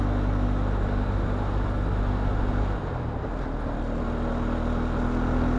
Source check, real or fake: real